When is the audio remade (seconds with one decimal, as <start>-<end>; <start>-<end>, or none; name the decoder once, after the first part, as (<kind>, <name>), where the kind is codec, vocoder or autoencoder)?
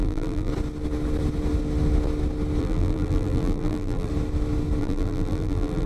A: 0.0-0.5 (vocoder, BigVGAN v2); 2.6-4.1; 4.8-5.9